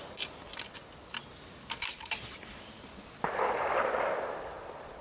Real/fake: real